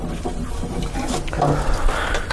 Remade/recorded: recorded